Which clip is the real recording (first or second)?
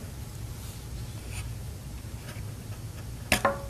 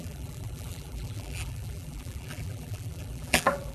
first